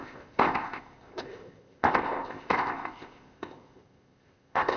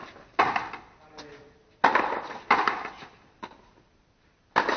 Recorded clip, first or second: second